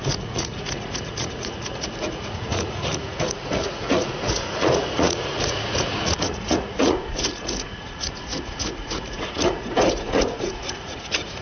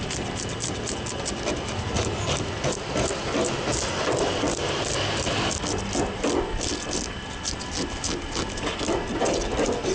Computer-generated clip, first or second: first